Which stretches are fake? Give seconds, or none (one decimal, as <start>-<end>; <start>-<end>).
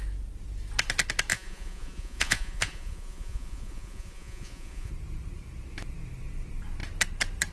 1.3-4.9